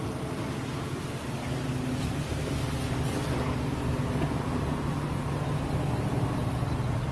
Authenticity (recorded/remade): recorded